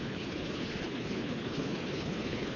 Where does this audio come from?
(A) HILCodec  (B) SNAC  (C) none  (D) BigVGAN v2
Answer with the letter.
A